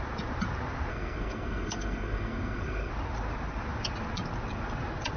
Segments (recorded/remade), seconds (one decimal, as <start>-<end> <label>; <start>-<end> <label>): 0.0-0.9 recorded; 0.9-2.9 remade; 2.9-5.2 recorded